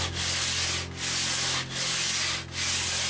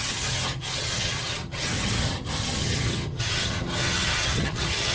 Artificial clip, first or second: second